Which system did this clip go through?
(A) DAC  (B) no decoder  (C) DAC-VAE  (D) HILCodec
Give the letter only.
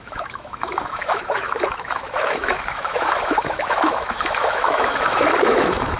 C